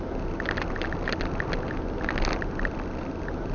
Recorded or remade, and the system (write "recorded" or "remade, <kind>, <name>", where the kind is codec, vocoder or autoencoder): recorded